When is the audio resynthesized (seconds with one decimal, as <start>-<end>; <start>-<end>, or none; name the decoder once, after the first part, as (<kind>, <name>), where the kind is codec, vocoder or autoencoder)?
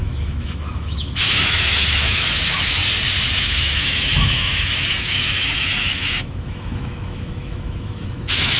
0.0-2.8 (autoencoder, DAC-VAE); 3.4-8.6